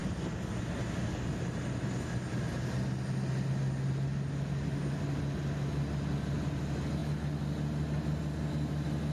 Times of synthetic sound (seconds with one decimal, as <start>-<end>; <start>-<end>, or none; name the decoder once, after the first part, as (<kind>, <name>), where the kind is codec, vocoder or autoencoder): none